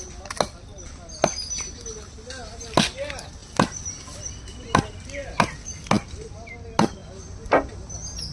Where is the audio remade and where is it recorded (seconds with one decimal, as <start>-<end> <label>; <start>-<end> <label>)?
0.0-8.3 recorded